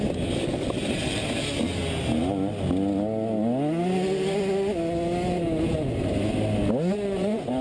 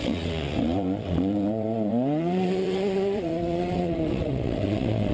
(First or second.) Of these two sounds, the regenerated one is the second